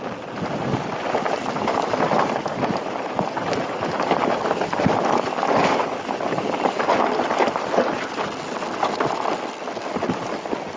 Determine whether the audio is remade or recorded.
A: recorded